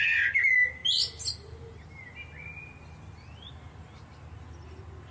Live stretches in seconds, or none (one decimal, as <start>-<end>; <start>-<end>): 0.0-5.1